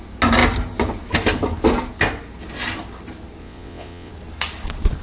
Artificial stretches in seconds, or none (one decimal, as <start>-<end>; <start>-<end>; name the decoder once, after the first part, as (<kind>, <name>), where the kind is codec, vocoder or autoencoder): 3.4-4.1 (vocoder, WaveNeXt)